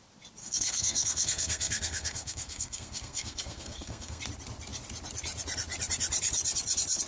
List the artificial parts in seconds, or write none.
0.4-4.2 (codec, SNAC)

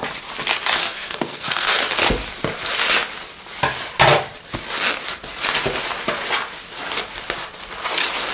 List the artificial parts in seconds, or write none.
0.8-1.8 (codec, SNAC)